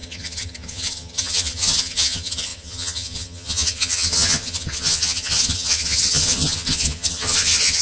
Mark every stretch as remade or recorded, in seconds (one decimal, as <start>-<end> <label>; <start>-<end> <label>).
0.0-7.8 remade